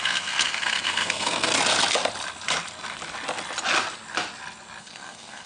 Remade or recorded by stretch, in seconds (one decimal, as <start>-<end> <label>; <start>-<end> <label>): 0.0-1.5 remade; 1.5-4.8 recorded; 4.8-5.5 remade